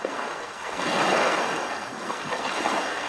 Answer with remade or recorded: remade